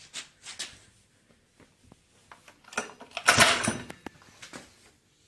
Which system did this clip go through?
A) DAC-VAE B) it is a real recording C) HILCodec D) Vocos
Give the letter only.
B